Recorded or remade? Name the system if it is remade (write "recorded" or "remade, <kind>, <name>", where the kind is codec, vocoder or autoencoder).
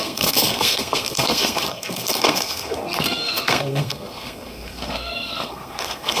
remade, codec, SNAC